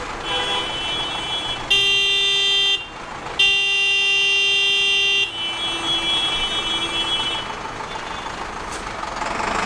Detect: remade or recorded recorded